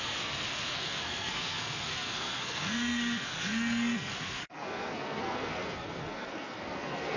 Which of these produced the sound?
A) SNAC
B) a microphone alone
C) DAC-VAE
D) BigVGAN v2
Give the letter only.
A